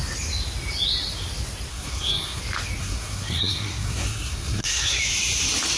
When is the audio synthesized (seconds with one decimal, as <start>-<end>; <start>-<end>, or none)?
1.7-2.4; 2.8-5.0